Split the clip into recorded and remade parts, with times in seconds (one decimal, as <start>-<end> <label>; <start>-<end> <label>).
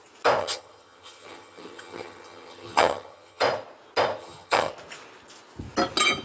0.0-0.4 recorded; 0.4-3.4 remade; 3.4-4.2 recorded; 4.2-4.7 remade; 4.7-6.2 recorded